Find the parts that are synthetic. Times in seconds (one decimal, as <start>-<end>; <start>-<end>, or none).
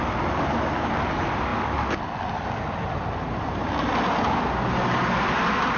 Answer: none